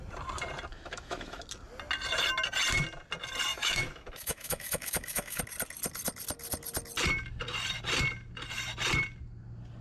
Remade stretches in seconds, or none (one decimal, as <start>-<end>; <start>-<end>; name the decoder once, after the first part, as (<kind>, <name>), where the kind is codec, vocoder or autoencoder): 0.7-1.4 (autoencoder, DAC-VAE); 3.5-5.4